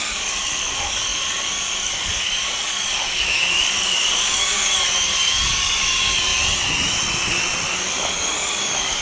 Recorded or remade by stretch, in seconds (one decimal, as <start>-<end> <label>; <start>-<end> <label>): 0.0-6.3 remade; 6.3-7.7 recorded; 7.7-9.0 remade